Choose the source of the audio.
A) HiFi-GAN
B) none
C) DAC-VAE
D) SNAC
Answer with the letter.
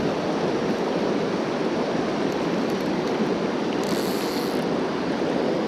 B